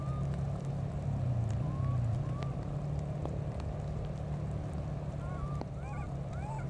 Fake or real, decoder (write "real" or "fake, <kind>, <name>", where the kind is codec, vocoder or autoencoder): real